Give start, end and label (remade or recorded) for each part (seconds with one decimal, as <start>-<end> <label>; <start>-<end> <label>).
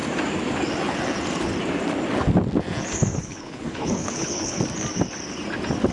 0.0-3.2 recorded; 3.2-4.6 remade; 4.6-5.9 recorded